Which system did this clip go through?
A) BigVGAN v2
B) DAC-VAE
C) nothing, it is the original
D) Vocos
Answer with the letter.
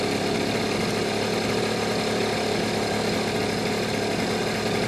C